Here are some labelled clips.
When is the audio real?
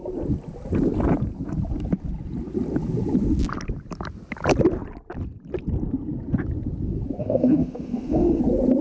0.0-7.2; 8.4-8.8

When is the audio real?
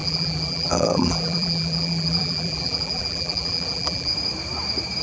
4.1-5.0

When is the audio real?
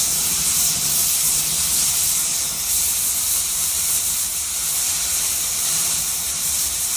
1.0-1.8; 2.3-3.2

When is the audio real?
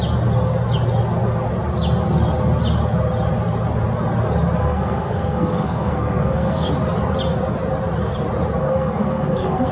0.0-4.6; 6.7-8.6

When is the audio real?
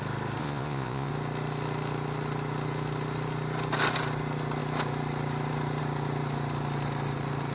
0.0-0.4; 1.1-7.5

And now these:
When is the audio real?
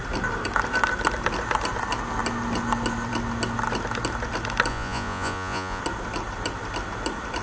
0.0-4.7; 5.8-7.4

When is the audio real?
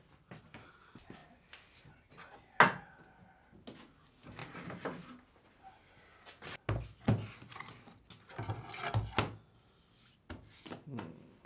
0.0-11.5